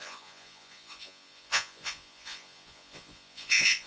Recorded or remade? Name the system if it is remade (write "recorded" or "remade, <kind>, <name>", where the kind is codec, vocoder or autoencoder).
remade, vocoder, Vocos